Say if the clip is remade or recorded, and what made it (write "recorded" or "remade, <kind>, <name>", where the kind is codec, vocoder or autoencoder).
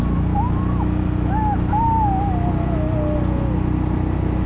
recorded